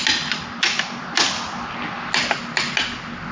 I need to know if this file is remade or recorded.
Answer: recorded